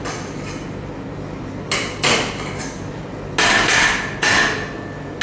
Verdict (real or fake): real